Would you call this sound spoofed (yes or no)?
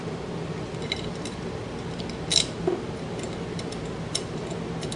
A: no